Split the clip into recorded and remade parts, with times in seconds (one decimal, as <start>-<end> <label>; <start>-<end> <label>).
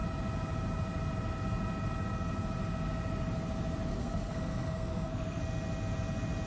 0.0-3.9 recorded; 3.9-5.4 remade; 5.4-6.5 recorded